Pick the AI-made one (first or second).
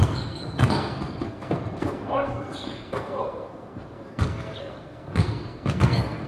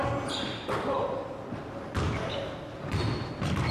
first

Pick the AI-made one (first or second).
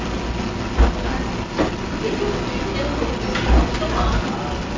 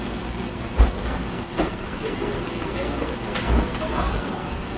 second